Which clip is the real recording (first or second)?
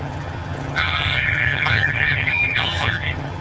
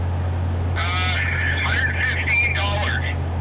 second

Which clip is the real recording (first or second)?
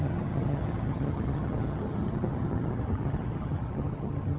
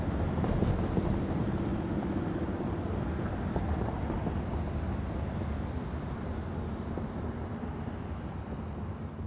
second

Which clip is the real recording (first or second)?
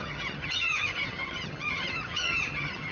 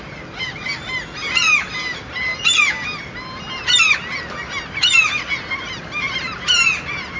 second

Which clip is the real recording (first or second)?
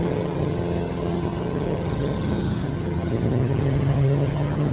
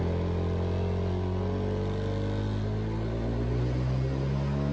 second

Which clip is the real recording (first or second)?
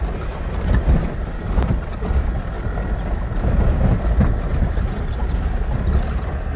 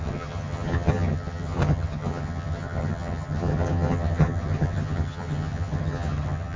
first